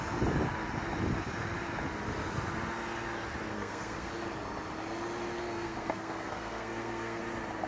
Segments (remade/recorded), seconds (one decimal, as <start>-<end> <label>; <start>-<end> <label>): 0.0-3.5 recorded; 3.5-4.1 remade; 4.1-5.4 recorded; 5.4-7.2 remade; 7.2-7.7 recorded